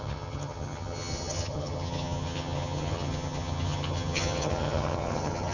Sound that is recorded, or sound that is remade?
remade